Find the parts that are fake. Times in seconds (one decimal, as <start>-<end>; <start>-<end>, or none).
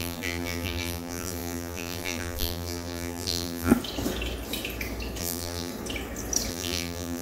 0.0-3.7; 5.2-5.7; 6.5-7.2